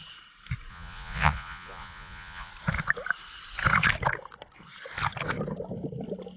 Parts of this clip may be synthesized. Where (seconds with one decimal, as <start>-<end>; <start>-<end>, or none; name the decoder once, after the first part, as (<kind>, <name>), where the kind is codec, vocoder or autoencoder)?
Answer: 0.7-2.5 (vocoder, Vocos)